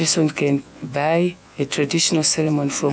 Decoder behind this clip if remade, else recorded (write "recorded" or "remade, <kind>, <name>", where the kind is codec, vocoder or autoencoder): remade, vocoder, Vocos